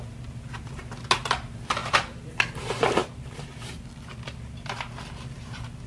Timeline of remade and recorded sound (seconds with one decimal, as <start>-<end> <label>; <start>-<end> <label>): 0.0-3.0 recorded; 3.0-4.9 remade; 4.9-5.9 recorded